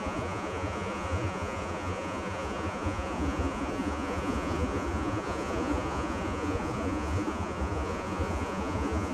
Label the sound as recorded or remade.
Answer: remade